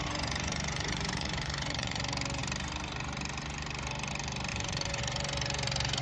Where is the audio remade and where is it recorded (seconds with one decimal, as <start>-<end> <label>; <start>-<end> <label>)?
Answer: 0.0-2.0 remade; 2.0-4.5 recorded; 4.5-5.0 remade; 5.0-6.0 recorded